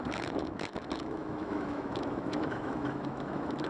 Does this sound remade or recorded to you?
remade